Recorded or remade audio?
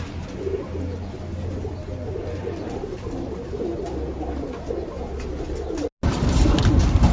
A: recorded